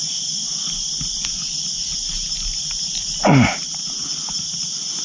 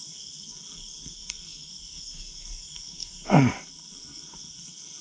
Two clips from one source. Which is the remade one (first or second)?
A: second